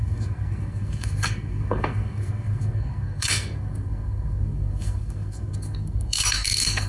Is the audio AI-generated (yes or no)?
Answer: yes